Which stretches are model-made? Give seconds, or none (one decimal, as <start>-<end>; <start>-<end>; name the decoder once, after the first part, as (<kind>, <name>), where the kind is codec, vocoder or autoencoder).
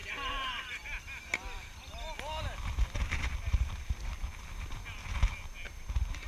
none